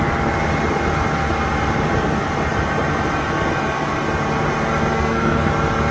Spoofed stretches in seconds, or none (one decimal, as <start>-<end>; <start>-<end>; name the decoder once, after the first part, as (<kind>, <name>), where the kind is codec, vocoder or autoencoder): 4.9-5.5 (codec, SNAC)

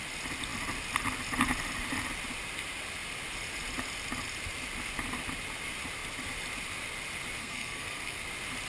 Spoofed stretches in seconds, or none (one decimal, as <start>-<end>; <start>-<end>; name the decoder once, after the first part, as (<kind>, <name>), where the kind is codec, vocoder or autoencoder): 7.4-8.2 (codec, SNAC)

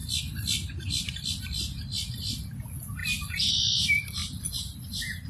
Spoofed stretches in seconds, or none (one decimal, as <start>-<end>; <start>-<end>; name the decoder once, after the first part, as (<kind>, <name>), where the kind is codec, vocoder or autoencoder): none

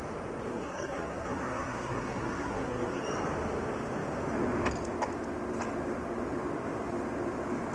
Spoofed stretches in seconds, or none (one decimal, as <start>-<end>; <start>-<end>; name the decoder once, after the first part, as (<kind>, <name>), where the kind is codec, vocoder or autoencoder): 0.5-3.0 (codec, SNAC)

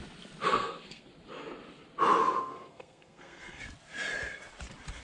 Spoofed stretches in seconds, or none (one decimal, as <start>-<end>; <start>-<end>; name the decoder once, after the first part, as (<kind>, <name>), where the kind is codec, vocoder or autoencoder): 0.5-1.1 (codec, SNAC); 2.2-3.6